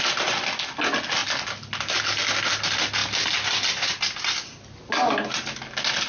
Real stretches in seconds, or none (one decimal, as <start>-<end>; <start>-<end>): 0.0-6.1